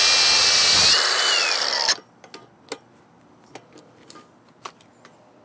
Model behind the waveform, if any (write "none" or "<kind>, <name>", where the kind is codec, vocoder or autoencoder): none